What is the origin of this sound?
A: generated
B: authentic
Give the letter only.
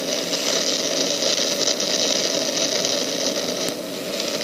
B